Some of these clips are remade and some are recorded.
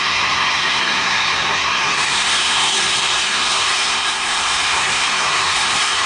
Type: remade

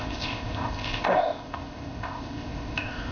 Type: remade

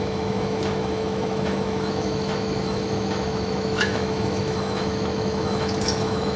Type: remade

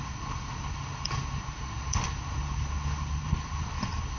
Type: remade